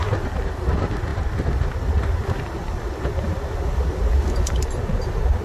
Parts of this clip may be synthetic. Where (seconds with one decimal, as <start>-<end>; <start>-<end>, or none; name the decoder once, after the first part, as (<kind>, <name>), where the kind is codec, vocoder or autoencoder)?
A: none